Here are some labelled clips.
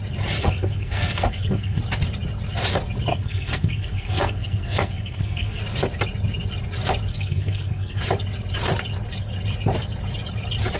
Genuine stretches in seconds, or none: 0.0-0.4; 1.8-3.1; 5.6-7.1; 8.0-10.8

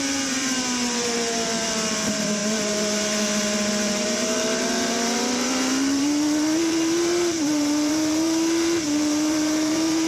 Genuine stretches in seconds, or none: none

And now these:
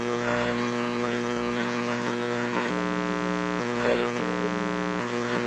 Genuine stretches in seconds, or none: 2.7-3.6; 4.2-5.0

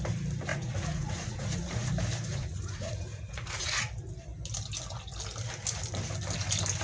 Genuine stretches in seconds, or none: 0.0-0.5; 1.9-2.3; 3.9-6.8

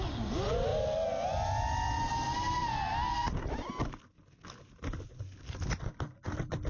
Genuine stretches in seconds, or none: 0.0-6.7

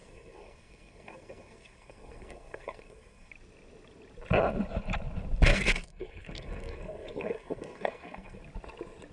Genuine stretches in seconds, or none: 3.3-5.5; 8.4-9.1

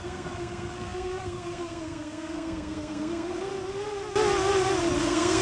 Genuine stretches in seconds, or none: 3.5-5.0